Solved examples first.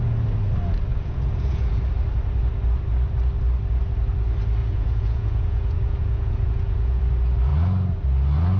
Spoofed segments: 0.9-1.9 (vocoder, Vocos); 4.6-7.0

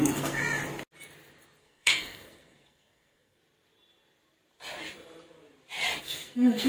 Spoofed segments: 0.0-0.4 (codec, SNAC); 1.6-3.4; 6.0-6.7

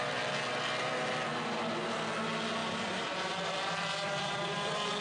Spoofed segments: 1.3-1.8 (vocoder, BigVGAN v2); 2.6-5.0

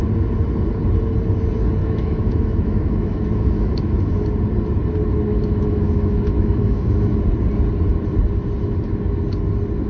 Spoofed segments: 1.8-4.2 (autoencoder, DAC-VAE); 5.3-7.2

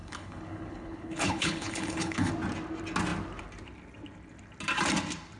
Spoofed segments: 0.0-2.3 (codec, HILCodec)

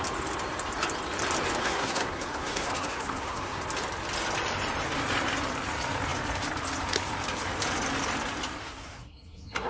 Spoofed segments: 1.6-3.6 (codec, SNAC); 8.6-9.7

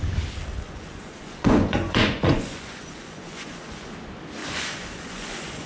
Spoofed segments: 0.5-3.9 (vocoder, Vocos); 4.4-5.7